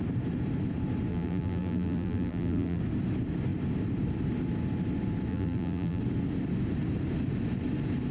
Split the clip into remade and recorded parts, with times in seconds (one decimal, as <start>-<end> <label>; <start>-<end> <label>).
0.0-1.1 recorded; 1.1-2.8 remade; 2.8-5.3 recorded; 5.3-6.0 remade; 6.0-8.1 recorded